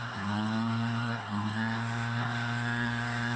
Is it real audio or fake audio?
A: fake